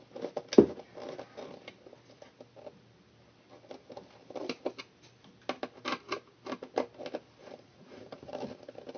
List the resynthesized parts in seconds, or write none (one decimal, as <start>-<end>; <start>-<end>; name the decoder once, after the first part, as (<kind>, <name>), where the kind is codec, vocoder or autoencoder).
7.4-8.3 (vocoder, Vocos)